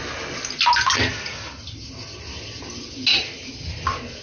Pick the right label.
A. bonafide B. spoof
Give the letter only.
A